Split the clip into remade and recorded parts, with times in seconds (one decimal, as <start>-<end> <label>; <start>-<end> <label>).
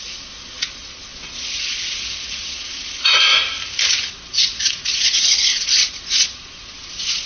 0.0-3.3 remade; 3.3-3.9 recorded; 3.9-7.3 remade